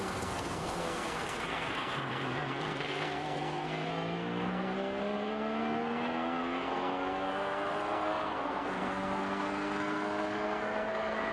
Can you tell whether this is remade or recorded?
remade